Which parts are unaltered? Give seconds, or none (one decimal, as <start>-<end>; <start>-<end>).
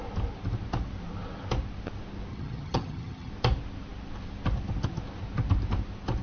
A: 0.0-2.3; 3.3-6.2